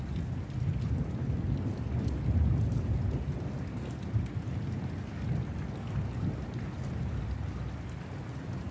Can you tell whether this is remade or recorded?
recorded